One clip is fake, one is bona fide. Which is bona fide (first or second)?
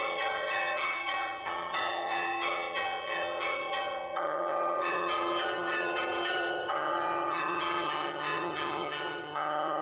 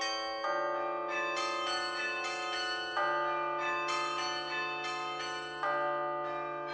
second